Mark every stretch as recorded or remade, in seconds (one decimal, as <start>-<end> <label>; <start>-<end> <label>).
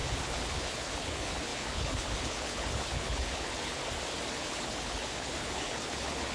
0.0-3.8 remade; 3.8-4.3 recorded; 4.3-6.3 remade